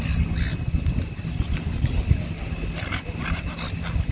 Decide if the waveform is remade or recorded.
recorded